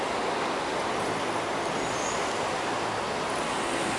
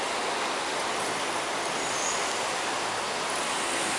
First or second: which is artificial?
second